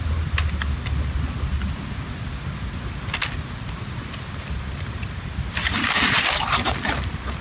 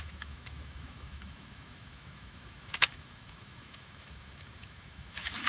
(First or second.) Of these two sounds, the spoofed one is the second